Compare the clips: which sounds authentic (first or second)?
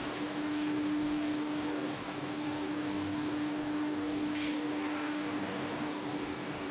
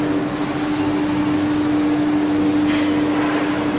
second